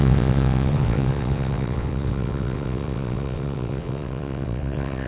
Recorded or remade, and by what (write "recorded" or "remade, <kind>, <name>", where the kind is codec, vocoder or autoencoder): remade, vocoder, WaveNeXt